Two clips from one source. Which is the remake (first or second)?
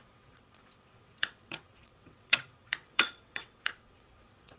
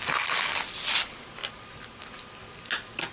first